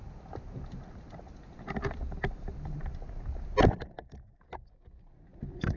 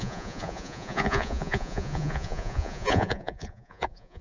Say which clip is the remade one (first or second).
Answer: second